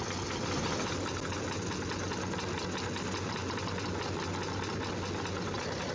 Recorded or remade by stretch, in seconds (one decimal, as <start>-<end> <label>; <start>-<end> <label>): 0.0-5.9 recorded